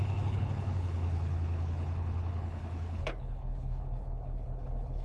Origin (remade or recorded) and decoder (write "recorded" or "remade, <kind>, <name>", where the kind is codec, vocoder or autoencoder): remade, codec, HILCodec